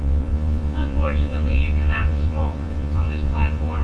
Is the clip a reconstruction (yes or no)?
yes